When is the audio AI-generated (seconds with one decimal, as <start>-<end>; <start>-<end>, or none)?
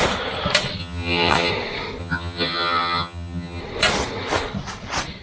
0.8-1.5; 2.0-3.6